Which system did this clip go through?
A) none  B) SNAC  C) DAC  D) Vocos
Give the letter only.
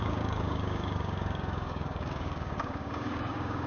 C